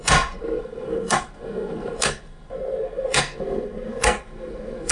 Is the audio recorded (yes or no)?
no